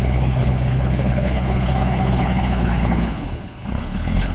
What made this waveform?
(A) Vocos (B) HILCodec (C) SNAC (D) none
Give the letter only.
B